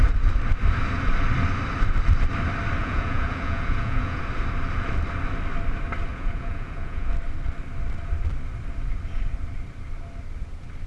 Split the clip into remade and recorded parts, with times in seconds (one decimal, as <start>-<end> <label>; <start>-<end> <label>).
0.0-2.8 recorded; 2.8-4.2 remade; 4.2-6.1 recorded; 6.1-7.1 remade; 7.1-10.9 recorded